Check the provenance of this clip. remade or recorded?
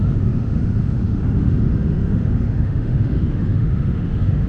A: remade